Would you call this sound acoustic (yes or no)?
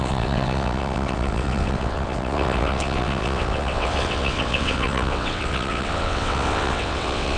no